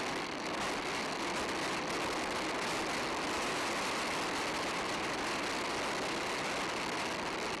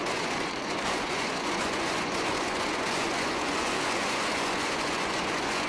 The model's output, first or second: second